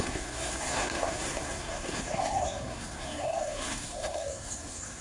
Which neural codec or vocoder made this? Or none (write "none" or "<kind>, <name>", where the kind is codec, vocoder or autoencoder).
codec, SNAC